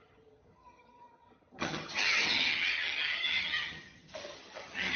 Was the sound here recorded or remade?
remade